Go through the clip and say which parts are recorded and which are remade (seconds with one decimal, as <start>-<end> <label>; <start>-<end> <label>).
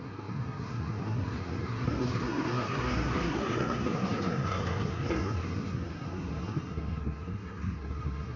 0.0-8.4 remade